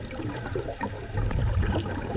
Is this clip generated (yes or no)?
yes